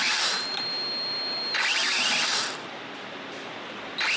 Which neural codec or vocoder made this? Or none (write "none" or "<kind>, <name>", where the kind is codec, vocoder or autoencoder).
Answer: none